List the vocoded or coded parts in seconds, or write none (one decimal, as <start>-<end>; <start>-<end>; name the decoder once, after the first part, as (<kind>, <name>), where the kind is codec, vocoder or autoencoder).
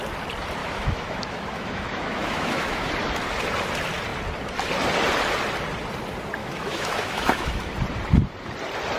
0.6-2.9 (autoencoder, DAC-VAE); 6.4-7.7